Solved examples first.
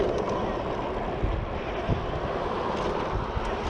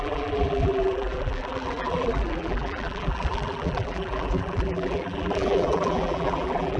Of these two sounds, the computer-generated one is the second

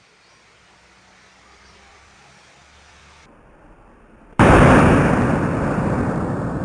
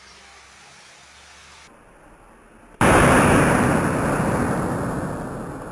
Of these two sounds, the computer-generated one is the first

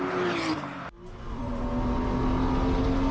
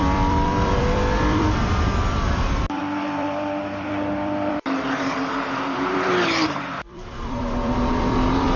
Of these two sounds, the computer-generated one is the second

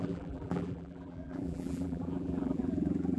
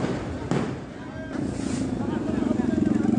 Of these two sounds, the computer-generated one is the first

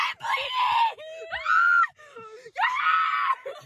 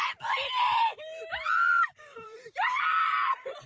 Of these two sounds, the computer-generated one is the second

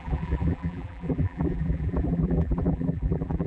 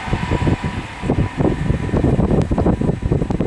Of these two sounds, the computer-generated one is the first